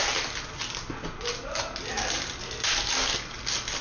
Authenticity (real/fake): real